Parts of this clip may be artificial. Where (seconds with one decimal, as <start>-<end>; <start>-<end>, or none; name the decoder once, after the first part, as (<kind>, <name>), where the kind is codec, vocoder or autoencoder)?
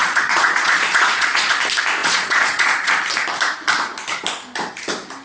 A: 0.0-1.5 (vocoder, Vocos); 2.0-2.9